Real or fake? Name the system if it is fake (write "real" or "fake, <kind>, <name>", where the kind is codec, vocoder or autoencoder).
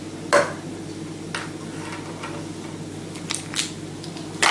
real